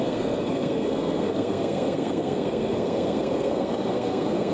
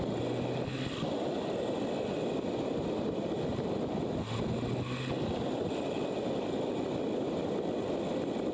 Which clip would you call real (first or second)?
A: second